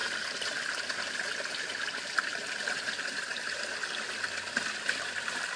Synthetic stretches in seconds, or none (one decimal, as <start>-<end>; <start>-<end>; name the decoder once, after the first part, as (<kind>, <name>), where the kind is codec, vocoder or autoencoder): 0.0-1.1 (vocoder, BigVGAN v2)